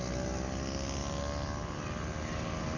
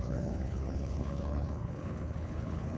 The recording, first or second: first